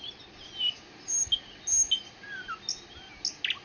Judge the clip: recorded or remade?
recorded